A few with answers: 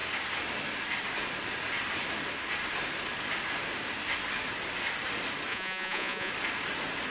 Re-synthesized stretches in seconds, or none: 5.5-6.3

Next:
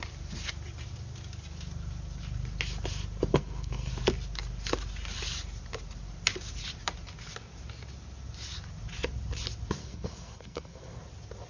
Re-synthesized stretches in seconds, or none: 3.3-3.9; 9.8-11.0

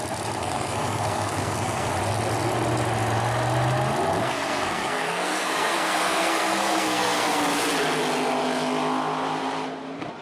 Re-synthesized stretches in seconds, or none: 0.4-1.9; 4.2-7.4

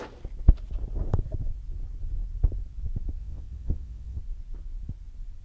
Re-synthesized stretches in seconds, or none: 3.2-4.2

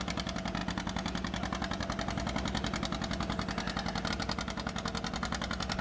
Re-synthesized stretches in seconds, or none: none

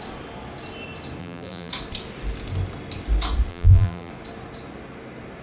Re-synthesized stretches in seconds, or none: 1.2-1.7; 3.5-4.1

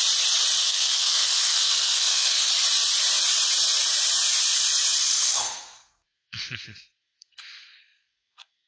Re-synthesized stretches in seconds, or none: 0.6-2.5; 5.1-8.7

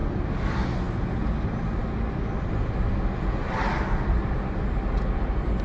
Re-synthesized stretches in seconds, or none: none